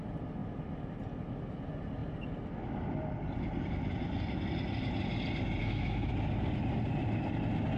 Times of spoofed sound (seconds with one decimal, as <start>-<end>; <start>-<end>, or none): 5.6-6.1